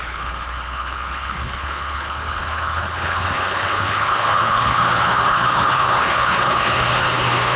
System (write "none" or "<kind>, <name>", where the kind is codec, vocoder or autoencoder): codec, HILCodec